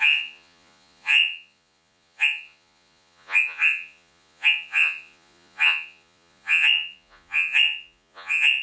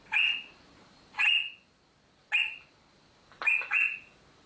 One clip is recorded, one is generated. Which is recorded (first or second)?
second